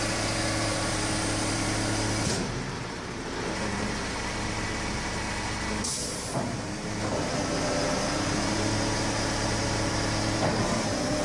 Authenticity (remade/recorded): remade